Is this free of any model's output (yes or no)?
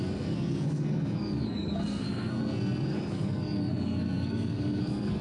no